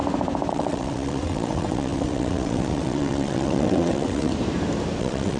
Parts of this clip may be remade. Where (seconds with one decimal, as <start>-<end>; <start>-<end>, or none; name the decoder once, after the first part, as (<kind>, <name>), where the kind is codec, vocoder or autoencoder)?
0.5-4.3 (vocoder, WaveNeXt); 5.0-5.4